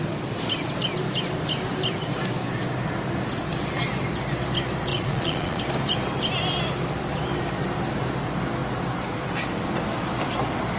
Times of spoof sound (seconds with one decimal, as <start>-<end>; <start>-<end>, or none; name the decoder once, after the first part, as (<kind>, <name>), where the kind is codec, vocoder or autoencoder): 4.9-5.6 (vocoder, Vocos)